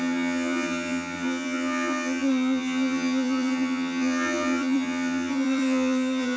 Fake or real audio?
fake